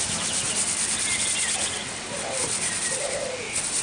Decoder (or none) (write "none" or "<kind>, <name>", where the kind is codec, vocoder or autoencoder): none